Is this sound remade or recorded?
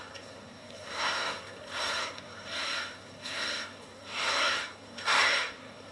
remade